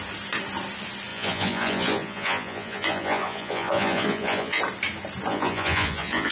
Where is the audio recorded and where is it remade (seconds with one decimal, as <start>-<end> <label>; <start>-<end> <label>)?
0.0-1.1 recorded; 1.1-4.6 remade; 4.6-5.3 recorded; 5.3-6.3 remade